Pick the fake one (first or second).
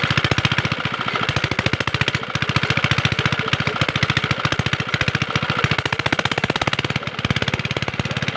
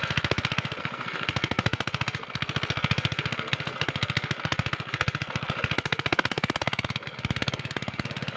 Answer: second